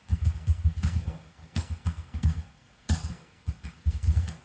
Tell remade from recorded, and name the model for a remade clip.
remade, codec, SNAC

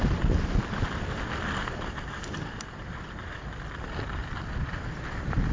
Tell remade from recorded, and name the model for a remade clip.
recorded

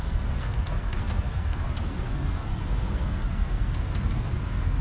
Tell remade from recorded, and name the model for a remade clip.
remade, codec, SNAC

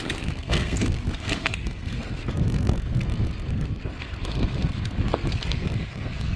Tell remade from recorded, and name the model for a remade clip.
remade, codec, SNAC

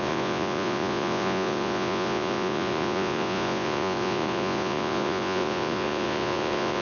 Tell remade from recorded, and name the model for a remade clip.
remade, vocoder, Vocos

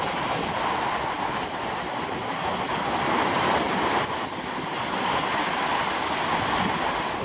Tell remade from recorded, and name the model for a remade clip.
recorded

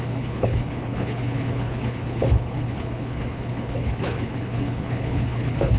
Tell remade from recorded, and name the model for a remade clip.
remade, codec, HILCodec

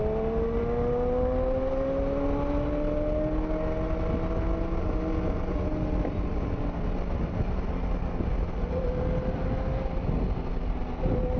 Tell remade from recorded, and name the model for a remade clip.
recorded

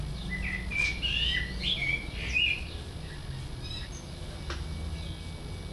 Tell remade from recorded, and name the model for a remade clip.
recorded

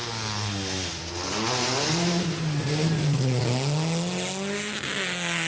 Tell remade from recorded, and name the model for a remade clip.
recorded